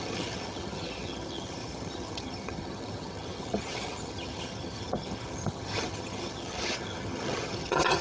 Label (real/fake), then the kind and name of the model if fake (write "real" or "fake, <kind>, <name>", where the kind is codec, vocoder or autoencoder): fake, vocoder, HiFi-GAN